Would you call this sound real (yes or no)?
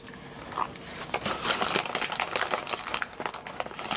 yes